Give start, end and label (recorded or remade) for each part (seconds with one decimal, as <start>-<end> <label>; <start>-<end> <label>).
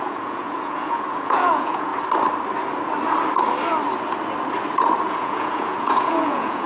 0.0-1.9 remade; 1.9-5.1 recorded; 5.1-6.7 remade